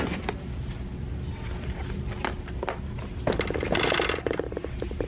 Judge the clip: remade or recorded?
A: recorded